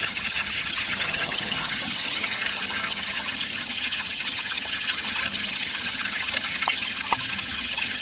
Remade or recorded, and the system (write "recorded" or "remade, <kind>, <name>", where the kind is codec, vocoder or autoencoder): remade, vocoder, HiFi-GAN